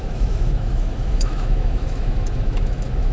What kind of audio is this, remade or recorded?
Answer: remade